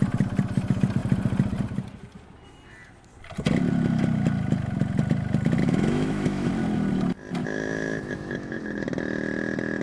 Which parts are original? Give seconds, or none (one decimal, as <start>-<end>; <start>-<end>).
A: 0.0-5.6; 6.5-7.4; 8.6-9.8